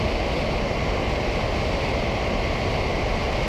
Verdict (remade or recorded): recorded